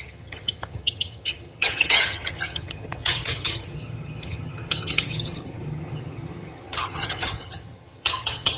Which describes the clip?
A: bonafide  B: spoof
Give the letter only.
B